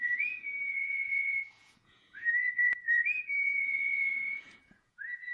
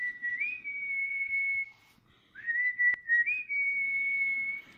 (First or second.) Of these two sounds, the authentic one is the second